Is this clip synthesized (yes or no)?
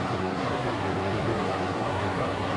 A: yes